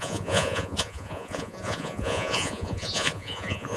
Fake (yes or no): yes